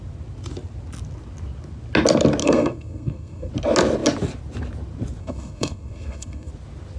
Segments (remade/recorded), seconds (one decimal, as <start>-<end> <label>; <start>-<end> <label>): 0.0-2.4 recorded; 2.4-3.5 remade; 3.5-5.2 recorded; 5.2-6.5 remade; 6.5-7.0 recorded